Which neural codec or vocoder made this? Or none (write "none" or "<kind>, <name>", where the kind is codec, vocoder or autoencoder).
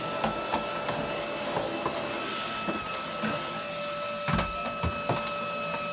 none